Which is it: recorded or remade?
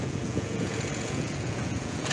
remade